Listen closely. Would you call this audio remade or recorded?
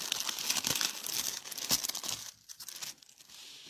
recorded